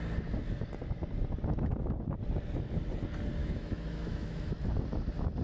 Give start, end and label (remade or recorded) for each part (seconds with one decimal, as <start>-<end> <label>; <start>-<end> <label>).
0.0-3.4 recorded; 3.4-4.5 remade; 4.5-5.4 recorded